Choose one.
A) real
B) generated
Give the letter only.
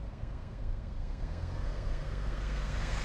B